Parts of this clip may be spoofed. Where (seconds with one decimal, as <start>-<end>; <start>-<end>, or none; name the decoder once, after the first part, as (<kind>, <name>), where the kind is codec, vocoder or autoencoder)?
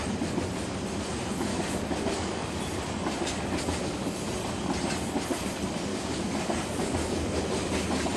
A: 1.5-2.6 (codec, DAC); 5.9-7.4